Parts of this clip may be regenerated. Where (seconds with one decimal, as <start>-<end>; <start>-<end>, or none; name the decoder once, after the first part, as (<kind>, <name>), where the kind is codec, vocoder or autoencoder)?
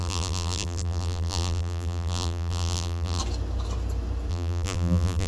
0.0-3.2 (vocoder, BigVGAN v2); 4.3-5.3